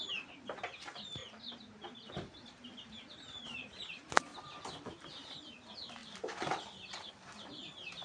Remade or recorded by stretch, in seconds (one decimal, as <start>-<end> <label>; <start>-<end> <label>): 0.0-8.0 remade